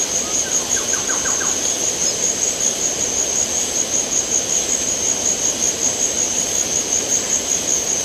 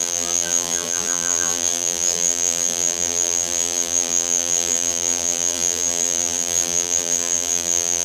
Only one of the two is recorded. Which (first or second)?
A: first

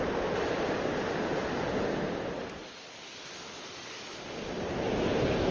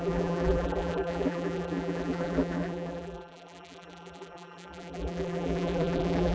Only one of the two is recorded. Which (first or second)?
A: first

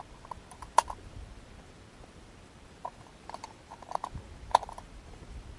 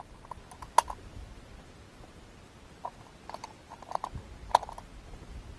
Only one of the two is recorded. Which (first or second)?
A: second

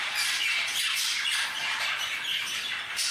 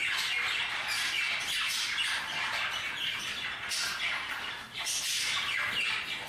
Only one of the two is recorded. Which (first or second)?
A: second